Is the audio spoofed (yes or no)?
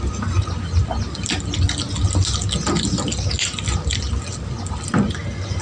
no